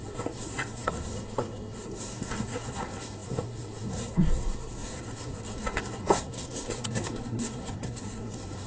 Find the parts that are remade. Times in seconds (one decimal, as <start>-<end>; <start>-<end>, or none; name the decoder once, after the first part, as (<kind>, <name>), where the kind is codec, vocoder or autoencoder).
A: 0.0-8.7 (codec, SNAC)